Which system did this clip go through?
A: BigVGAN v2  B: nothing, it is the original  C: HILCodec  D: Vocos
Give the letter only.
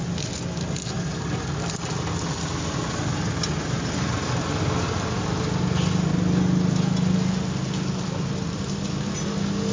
B